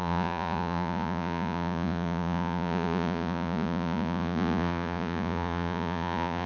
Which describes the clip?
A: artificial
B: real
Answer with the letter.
A